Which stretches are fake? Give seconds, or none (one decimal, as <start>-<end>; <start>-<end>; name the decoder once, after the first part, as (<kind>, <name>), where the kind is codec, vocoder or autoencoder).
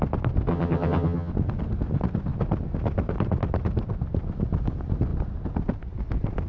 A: 0.5-1.3 (vocoder, HiFi-GAN)